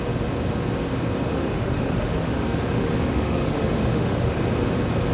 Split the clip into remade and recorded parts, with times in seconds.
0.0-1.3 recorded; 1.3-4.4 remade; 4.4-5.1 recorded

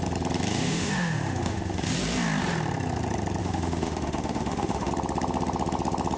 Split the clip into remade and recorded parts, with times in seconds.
0.0-0.5 recorded; 0.5-1.9 remade; 1.9-3.4 recorded; 3.4-4.9 remade; 4.9-6.2 recorded